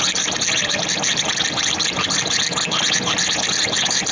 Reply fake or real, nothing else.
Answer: real